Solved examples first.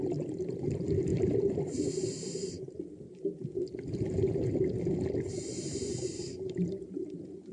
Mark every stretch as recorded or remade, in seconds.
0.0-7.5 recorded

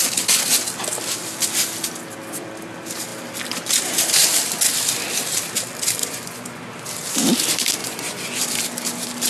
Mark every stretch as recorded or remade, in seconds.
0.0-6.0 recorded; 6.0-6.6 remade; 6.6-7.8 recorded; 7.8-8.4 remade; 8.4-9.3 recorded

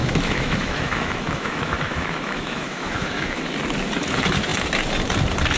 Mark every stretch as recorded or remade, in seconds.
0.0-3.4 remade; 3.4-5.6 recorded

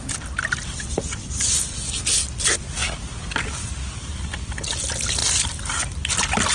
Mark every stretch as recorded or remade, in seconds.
0.0-6.5 recorded

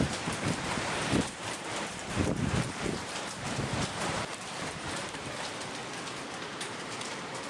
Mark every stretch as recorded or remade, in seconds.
0.0-5.8 remade; 5.8-6.5 recorded; 6.5-7.5 remade